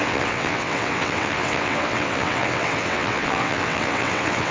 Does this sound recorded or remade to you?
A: remade